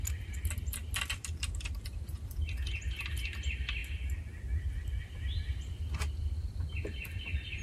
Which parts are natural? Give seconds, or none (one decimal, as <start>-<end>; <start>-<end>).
0.0-7.6